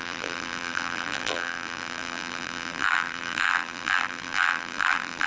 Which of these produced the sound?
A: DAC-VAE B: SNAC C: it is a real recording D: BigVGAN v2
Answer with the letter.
D